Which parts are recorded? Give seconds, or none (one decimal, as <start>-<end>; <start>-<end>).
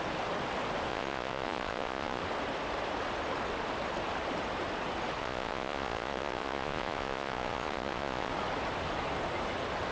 0.0-0.9; 2.2-5.2; 8.3-9.9